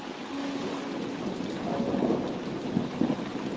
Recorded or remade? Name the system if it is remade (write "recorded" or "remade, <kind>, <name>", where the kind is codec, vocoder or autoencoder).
recorded